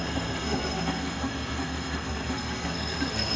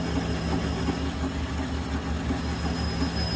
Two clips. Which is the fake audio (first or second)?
first